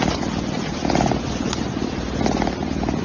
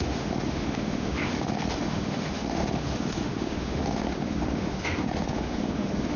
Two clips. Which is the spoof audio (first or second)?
second